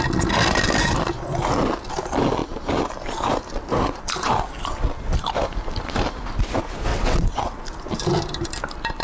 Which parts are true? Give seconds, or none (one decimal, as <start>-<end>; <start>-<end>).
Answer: 0.0-6.9; 7.6-9.0